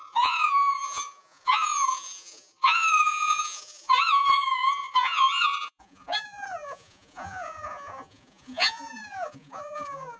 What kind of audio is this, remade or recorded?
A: remade